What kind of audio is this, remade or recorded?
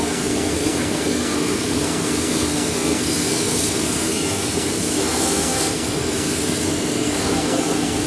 remade